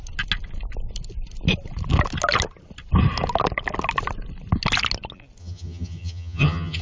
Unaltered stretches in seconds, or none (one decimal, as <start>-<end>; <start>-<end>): 0.0-5.4